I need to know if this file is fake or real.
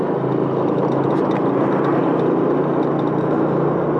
real